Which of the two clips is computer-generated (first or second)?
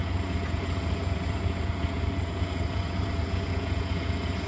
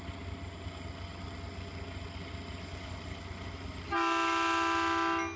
first